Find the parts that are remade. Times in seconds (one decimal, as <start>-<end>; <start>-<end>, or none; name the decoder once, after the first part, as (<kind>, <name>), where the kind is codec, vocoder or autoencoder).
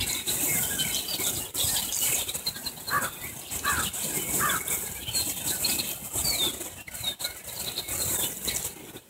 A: none